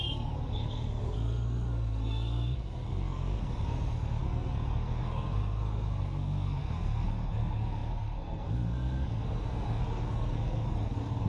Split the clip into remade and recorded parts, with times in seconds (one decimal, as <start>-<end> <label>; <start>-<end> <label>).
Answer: 0.0-11.3 remade